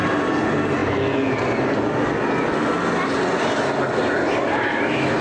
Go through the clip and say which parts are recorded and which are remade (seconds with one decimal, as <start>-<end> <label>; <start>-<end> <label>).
0.0-5.2 recorded